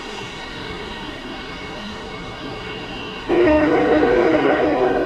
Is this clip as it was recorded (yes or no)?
no